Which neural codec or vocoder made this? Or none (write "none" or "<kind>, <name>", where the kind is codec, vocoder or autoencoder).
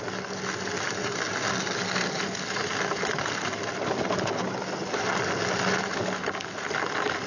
none